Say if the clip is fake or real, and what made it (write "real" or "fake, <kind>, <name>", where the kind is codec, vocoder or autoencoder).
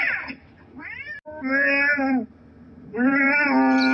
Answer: real